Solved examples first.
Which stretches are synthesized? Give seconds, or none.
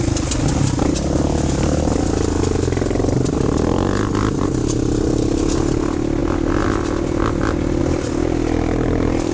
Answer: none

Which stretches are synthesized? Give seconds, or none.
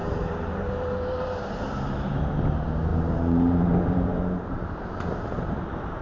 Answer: 0.0-2.2; 2.9-6.0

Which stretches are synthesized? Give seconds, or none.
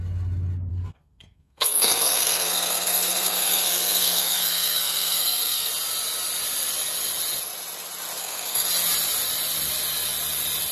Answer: 0.7-5.7; 8.2-8.7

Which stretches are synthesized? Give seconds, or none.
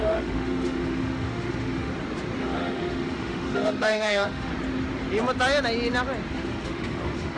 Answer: 0.0-1.9; 2.4-4.5; 6.3-7.4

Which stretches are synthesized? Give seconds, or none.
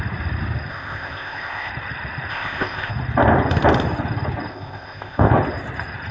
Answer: 0.7-1.7; 2.3-2.9; 4.5-5.3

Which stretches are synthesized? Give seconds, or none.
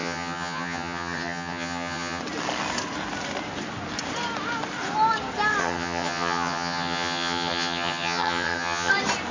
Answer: 0.0-2.2; 5.6-8.9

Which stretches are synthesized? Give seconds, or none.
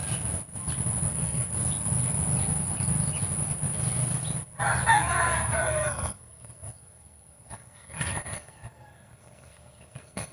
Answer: 1.1-1.5; 4.9-10.3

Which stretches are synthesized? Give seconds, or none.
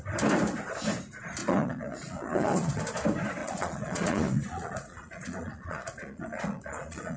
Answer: 1.4-2.8; 3.4-7.2